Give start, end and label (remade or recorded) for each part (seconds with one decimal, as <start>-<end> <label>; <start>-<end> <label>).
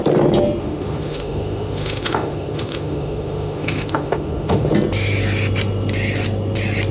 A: 0.0-0.6 recorded; 0.6-4.7 remade; 4.7-6.9 recorded